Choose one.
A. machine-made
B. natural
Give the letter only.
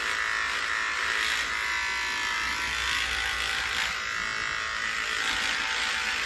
B